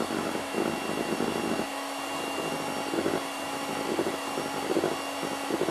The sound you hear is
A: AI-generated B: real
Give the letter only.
B